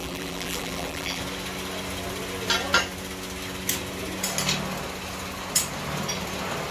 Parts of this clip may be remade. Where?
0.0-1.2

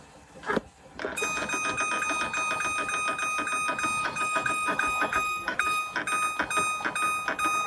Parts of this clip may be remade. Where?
4.0-5.8